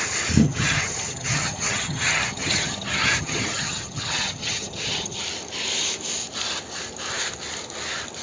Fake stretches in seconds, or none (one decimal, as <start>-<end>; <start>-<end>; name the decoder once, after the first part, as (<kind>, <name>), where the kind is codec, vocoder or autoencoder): 0.4-5.2 (vocoder, HiFi-GAN)